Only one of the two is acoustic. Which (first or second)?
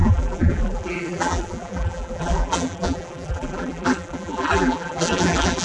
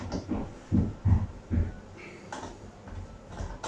second